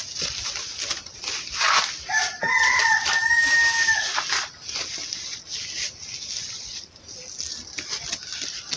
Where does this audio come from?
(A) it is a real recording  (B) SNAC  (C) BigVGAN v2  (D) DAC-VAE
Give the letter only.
A